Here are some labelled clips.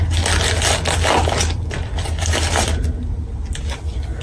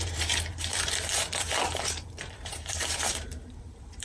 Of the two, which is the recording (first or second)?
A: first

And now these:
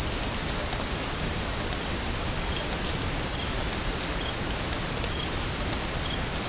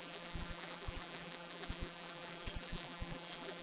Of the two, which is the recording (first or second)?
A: first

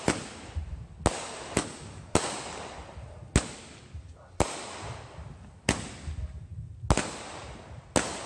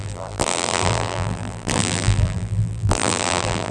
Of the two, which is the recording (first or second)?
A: first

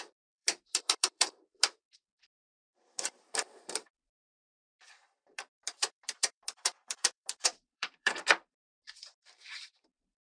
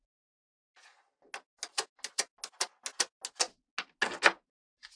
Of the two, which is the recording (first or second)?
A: second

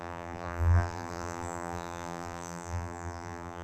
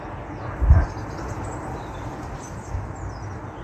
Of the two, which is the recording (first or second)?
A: second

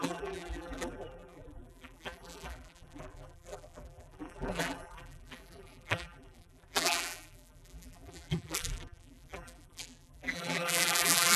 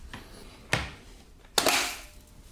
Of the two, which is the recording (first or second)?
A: second